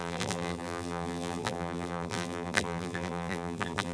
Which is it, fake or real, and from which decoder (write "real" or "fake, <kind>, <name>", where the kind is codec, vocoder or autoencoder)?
fake, vocoder, BigVGAN v2